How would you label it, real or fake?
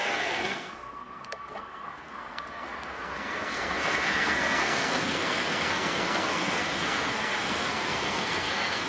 fake